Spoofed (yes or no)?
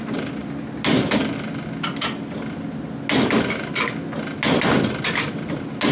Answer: no